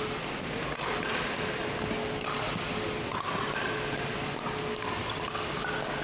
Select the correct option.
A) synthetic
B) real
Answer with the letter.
B